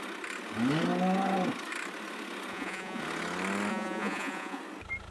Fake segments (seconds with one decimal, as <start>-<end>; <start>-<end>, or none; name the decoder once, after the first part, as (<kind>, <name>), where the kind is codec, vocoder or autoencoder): 2.5-3.0 (vocoder, Vocos); 3.7-4.6